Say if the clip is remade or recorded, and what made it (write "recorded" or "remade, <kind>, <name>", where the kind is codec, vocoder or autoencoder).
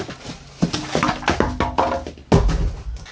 recorded